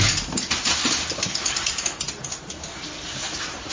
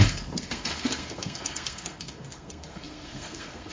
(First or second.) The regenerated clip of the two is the second